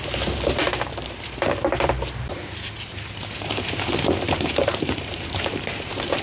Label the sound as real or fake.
fake